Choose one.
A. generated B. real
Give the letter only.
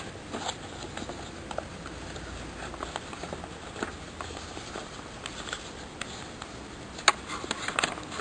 B